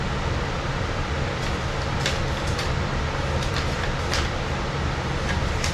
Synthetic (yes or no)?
no